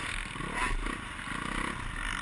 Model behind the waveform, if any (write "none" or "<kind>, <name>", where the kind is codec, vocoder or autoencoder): none